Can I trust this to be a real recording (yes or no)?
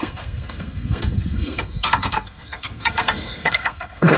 no